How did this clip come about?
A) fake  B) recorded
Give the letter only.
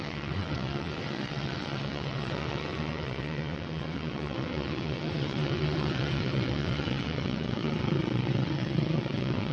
A